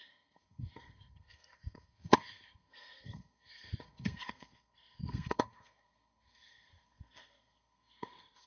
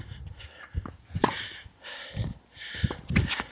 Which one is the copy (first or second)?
first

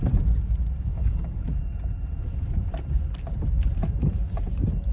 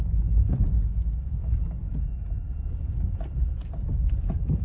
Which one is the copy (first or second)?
first